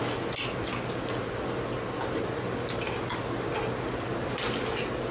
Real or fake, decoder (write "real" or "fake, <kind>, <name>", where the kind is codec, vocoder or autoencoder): real